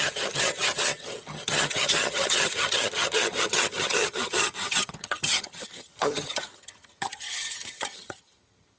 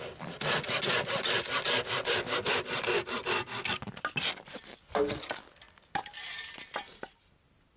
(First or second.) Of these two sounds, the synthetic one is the first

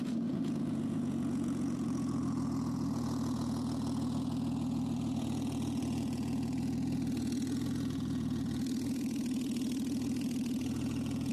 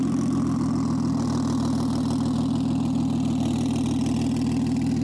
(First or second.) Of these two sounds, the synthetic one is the first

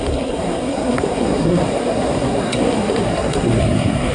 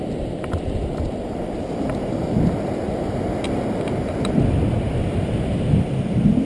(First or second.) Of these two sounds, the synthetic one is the first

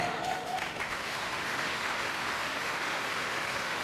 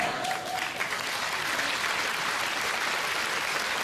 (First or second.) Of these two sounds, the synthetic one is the first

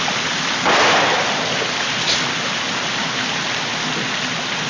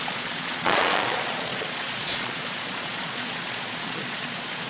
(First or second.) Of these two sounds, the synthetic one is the second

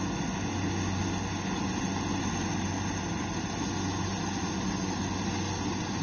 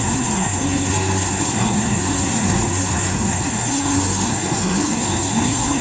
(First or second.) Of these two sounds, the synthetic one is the second